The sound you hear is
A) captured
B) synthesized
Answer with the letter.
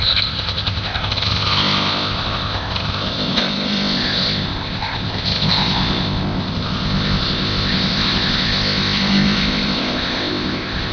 B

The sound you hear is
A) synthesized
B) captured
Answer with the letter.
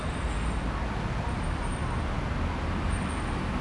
B